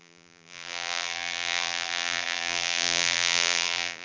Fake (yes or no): yes